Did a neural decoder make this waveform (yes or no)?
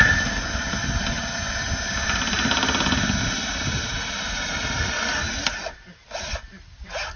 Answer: no